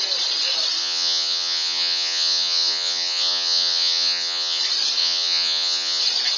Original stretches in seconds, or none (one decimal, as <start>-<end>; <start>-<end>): 0.0-0.8; 4.6-5.0; 6.0-6.4